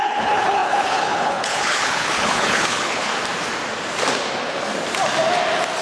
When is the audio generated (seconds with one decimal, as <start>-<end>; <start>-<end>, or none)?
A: 0.0-3.1